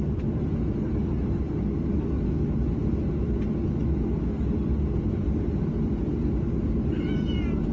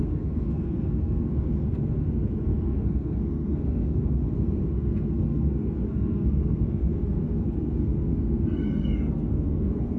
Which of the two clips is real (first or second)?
first